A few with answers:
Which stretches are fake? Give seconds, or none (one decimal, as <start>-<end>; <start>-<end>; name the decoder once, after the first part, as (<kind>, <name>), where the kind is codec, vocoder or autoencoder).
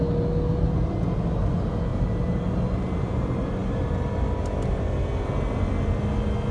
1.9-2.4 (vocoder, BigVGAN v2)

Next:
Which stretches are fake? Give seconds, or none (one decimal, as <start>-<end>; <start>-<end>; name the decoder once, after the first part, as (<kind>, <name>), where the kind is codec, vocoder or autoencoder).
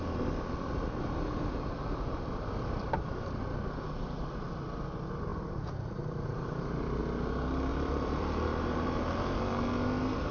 2.8-3.4 (vocoder, BigVGAN v2); 5.3-7.0; 7.7-9.1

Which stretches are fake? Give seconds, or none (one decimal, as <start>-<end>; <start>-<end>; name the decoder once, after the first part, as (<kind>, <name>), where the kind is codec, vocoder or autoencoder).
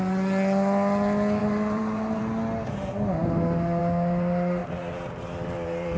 1.4-2.2 (vocoder, BigVGAN v2); 4.6-6.0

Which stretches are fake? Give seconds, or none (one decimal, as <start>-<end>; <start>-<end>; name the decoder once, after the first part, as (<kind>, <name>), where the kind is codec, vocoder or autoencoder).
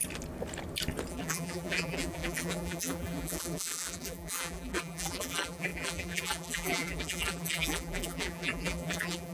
1.1-9.3 (vocoder, BigVGAN v2)